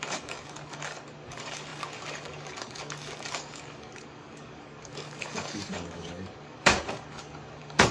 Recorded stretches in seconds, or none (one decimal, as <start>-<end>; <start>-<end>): none